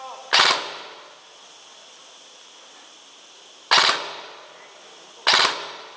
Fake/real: real